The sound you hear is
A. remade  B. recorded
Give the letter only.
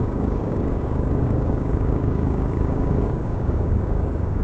A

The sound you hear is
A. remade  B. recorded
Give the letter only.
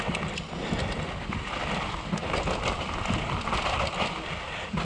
B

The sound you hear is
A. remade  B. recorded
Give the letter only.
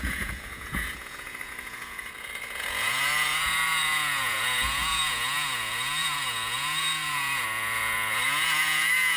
A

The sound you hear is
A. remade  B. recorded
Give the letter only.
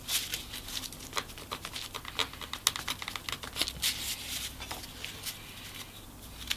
B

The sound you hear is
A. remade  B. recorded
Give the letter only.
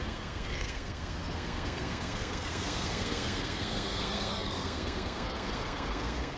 A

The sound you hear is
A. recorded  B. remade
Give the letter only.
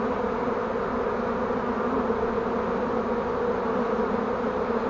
A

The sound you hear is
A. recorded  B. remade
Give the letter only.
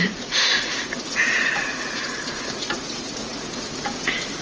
B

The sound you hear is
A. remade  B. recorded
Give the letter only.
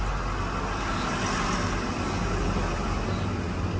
B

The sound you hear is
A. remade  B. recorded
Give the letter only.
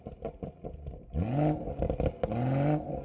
B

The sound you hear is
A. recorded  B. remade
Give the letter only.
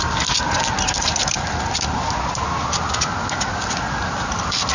A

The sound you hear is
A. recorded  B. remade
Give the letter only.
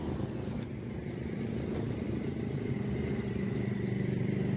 A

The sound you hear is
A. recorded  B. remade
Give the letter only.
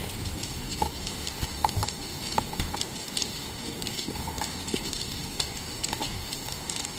B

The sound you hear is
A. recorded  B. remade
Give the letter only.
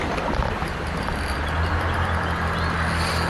A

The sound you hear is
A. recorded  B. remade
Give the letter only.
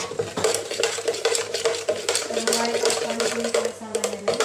B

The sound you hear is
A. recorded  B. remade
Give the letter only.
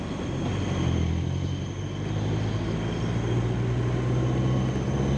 A